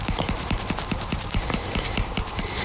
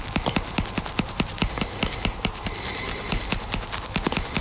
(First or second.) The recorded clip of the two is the second